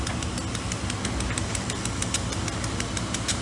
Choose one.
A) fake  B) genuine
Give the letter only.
B